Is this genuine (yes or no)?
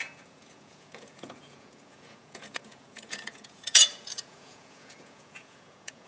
no